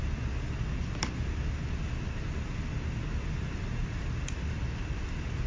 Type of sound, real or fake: real